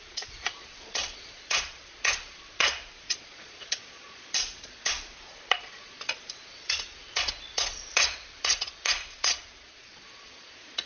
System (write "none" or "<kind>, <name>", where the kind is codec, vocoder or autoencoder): vocoder, Vocos